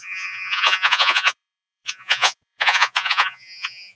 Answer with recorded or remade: remade